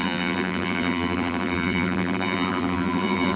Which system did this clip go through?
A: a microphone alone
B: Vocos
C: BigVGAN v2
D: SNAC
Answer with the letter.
C